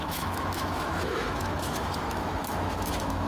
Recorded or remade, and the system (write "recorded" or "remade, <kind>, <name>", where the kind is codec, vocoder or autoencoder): remade, autoencoder, DAC-VAE